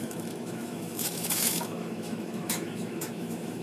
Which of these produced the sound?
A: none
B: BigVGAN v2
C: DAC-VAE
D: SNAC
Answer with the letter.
C